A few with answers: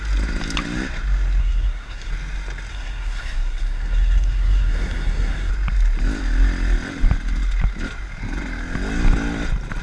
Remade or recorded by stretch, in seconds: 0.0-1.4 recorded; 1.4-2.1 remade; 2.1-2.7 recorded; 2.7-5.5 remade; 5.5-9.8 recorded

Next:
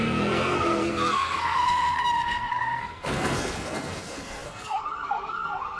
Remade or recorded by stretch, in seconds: 0.0-5.8 remade

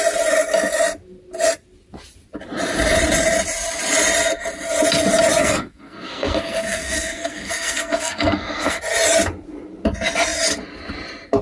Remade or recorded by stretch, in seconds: 0.0-5.4 recorded; 5.4-8.8 remade; 8.8-11.4 recorded